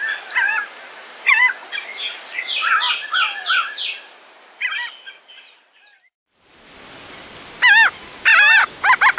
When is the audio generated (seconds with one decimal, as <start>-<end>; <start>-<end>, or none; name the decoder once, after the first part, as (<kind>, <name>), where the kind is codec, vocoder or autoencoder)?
0.0-1.6 (vocoder, BigVGAN v2); 5.2-9.2